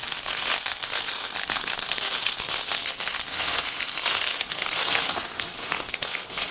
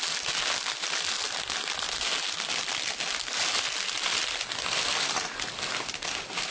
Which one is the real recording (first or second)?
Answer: second